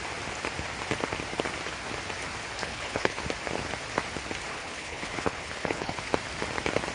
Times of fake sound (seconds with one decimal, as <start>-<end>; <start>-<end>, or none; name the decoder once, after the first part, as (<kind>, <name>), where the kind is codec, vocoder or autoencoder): 2.6-3.2 (codec, HILCodec); 4.5-6.0